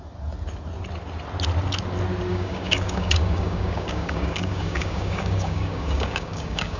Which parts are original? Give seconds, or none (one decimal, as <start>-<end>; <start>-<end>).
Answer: 0.0-2.3